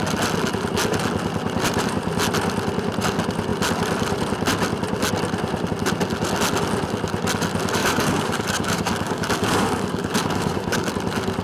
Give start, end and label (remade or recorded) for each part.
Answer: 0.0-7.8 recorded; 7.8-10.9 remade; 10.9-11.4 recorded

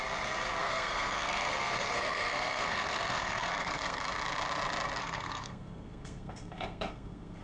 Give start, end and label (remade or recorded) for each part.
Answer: 0.0-0.6 recorded; 0.6-4.0 remade; 4.0-5.0 recorded; 5.0-7.4 remade